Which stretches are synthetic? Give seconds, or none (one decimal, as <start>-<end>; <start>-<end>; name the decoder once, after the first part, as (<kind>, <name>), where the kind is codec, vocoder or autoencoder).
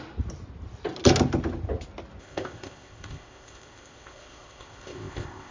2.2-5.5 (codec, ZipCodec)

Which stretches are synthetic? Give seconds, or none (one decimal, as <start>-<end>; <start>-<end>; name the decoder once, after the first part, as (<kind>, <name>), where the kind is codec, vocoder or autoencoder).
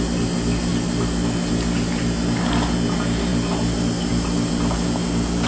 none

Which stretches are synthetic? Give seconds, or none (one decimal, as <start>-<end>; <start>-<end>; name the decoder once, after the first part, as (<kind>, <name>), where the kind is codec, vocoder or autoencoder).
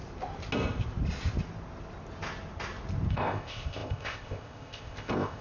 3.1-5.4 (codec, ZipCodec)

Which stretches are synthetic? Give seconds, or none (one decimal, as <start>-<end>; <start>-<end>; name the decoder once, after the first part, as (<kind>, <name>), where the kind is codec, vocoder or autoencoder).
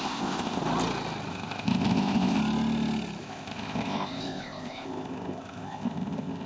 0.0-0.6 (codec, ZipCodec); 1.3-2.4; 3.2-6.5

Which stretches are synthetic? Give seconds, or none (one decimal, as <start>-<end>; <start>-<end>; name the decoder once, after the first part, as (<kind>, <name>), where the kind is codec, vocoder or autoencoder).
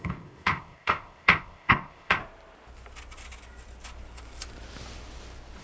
0.0-2.2 (codec, ZipCodec)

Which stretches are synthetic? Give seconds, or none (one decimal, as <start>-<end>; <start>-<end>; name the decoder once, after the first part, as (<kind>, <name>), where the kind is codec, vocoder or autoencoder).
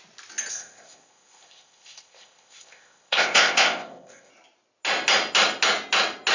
0.5-4.3 (codec, ZipCodec)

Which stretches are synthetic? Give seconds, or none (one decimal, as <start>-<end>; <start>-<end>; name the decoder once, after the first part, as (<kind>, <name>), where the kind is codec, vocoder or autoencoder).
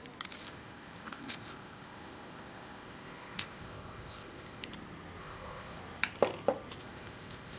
0.4-4.6 (codec, ZipCodec); 5.2-5.8; 6.8-7.6